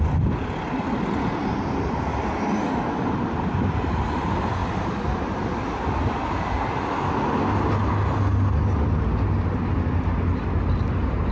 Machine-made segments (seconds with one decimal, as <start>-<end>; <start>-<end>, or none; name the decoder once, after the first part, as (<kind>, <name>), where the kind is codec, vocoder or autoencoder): none